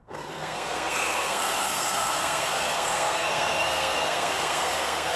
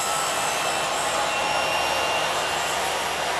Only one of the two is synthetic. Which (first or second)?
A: first